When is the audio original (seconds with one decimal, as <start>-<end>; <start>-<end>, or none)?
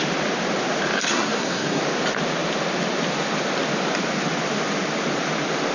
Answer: 0.0-1.1; 1.8-5.7